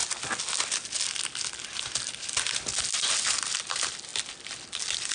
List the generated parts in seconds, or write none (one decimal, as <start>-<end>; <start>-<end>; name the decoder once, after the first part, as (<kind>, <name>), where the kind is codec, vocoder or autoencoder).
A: none